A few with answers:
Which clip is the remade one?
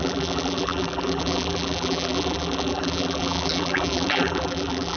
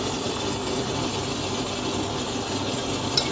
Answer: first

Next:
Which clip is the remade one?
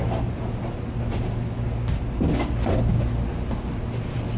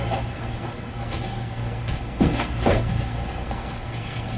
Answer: second